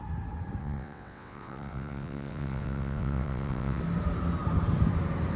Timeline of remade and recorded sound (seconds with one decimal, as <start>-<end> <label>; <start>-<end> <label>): 0.0-0.6 recorded; 0.6-3.8 remade; 3.8-5.4 recorded